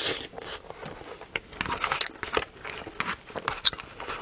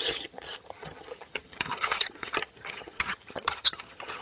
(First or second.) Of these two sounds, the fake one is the second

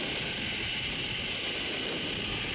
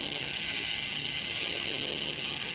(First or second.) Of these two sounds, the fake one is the second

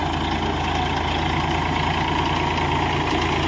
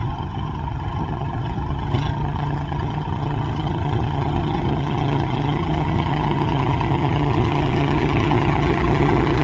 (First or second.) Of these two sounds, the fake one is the second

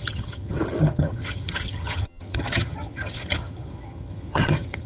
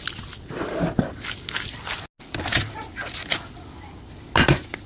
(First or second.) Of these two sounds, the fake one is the first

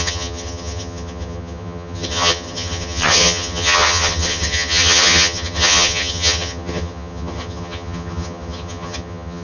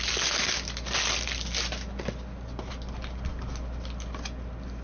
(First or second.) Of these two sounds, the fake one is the first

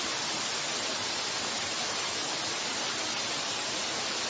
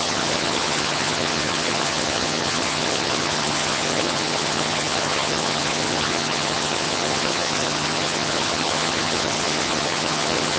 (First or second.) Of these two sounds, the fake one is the second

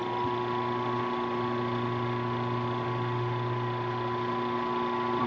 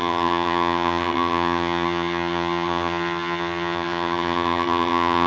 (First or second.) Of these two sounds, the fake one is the second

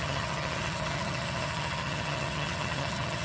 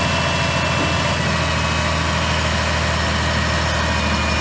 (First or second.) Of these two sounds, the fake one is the first